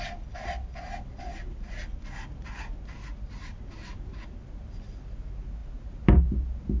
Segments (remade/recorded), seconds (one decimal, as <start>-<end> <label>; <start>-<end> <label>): 0.0-6.8 recorded